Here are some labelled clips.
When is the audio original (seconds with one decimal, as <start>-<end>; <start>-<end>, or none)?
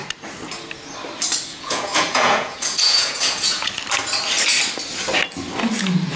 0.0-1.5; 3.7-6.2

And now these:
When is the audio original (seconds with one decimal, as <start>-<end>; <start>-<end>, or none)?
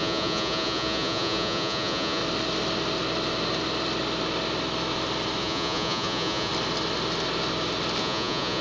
2.2-5.4; 6.5-8.0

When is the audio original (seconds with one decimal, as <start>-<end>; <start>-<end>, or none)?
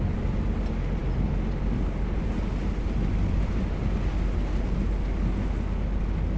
0.0-6.4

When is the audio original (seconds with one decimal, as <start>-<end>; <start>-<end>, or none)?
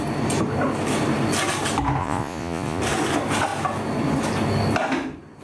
0.0-2.0; 2.8-5.4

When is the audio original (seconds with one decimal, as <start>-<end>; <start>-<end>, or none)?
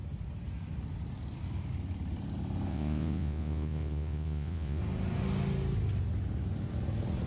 0.0-2.7; 4.8-7.3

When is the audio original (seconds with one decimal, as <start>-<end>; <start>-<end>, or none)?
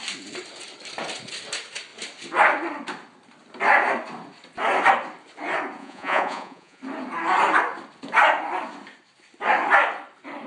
0.0-5.8; 6.8-10.5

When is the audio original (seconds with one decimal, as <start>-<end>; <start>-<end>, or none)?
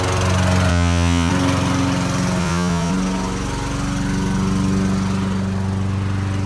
0.0-0.7; 1.3-2.4; 2.9-6.5